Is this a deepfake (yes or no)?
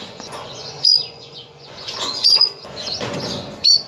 yes